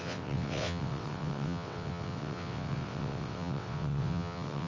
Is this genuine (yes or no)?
no